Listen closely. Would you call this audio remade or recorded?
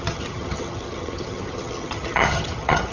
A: remade